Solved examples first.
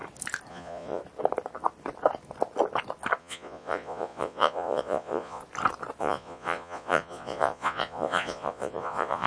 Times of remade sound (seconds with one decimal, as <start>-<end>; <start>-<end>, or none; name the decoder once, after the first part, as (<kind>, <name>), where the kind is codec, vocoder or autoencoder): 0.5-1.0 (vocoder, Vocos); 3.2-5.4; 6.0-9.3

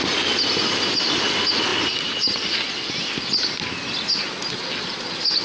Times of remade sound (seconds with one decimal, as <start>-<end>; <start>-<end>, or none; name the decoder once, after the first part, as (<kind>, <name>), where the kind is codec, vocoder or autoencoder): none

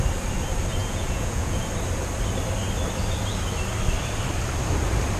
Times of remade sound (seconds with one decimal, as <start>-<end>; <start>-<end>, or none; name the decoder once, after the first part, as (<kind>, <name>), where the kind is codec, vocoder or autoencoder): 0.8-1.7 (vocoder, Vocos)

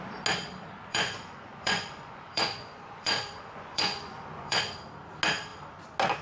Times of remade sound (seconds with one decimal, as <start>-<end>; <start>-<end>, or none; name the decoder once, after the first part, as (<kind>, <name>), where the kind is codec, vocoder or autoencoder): 0.9-4.6 (vocoder, Vocos)